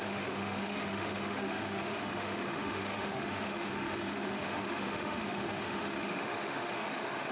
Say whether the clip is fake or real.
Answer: fake